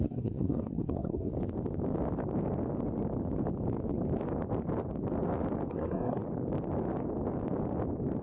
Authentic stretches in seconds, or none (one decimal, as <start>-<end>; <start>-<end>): 1.3-5.7; 6.2-8.2